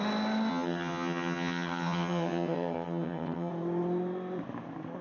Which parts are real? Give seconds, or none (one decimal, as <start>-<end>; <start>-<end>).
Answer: 0.0-0.5; 3.5-5.0